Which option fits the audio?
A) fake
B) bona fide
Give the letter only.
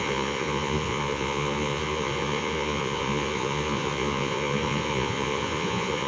A